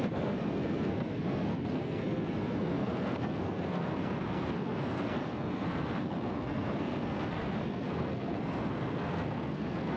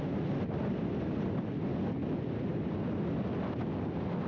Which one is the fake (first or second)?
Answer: first